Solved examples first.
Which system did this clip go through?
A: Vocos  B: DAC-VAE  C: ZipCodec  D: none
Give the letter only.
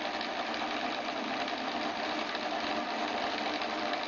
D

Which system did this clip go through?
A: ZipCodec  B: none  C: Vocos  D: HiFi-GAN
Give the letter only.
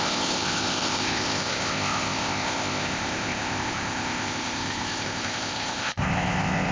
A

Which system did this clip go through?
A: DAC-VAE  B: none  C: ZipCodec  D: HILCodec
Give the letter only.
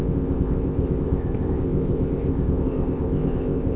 C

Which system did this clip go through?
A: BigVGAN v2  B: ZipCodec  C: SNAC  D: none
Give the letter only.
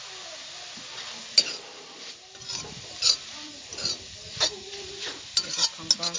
D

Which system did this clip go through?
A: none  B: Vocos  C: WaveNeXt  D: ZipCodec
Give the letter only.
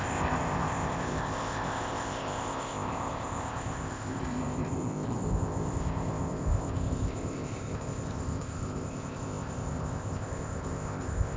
D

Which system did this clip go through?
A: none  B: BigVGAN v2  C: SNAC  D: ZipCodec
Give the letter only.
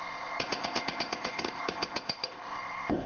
D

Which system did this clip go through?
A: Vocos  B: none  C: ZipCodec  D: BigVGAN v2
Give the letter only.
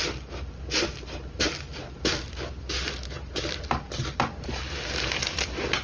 B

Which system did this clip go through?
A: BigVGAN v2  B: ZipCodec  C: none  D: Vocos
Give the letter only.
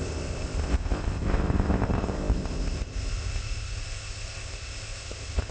B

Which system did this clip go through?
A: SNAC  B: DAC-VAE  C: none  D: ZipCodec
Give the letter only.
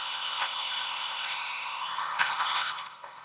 D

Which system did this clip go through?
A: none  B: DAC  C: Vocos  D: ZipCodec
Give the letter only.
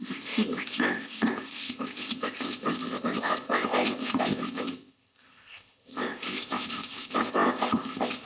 D